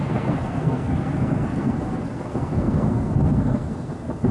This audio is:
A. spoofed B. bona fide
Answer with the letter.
A